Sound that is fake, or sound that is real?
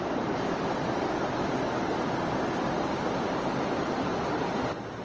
real